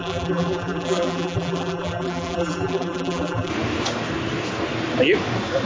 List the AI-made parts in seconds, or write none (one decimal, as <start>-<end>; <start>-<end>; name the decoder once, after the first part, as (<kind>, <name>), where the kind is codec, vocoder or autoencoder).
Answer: 0.0-3.5 (vocoder, BigVGAN v2)